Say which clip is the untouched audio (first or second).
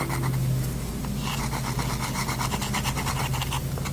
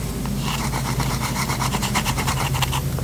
first